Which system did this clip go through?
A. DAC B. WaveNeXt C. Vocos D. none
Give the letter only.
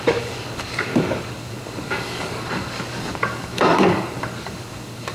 A